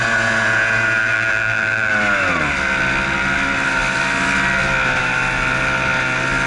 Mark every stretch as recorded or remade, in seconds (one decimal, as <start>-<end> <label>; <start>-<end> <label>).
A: 0.0-1.0 recorded; 1.0-1.9 remade; 1.9-6.5 recorded